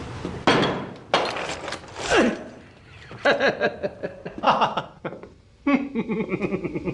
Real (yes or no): yes